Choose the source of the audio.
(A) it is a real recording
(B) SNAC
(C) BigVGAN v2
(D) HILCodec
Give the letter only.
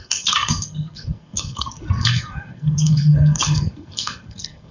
B